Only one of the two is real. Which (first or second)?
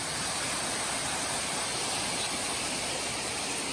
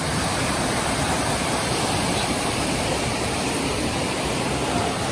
first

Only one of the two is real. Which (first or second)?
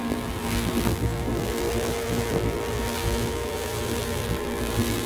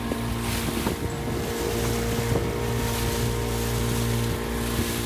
second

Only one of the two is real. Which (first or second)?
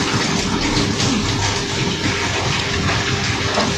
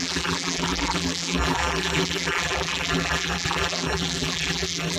first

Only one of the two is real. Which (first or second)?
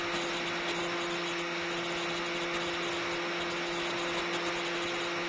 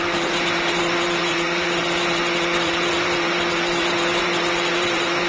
first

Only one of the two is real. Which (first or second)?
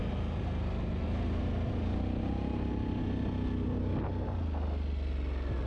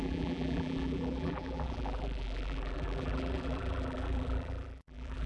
first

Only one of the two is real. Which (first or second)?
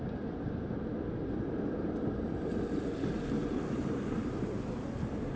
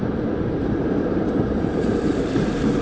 first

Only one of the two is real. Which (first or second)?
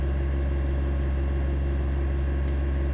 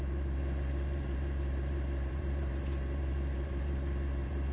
first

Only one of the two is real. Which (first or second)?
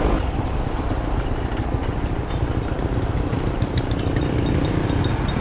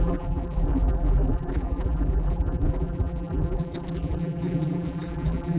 first